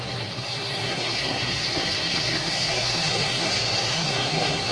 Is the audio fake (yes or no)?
yes